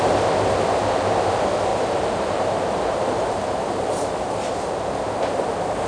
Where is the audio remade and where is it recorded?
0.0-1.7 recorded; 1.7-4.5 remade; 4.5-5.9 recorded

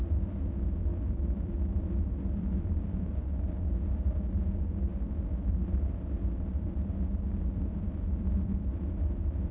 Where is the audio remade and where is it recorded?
0.0-0.9 recorded; 0.9-3.5 remade; 3.5-6.5 recorded; 6.5-9.5 remade